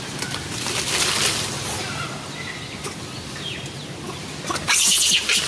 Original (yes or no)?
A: yes